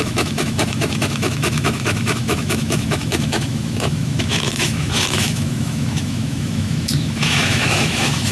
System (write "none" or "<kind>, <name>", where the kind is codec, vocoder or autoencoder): autoencoder, DAC-VAE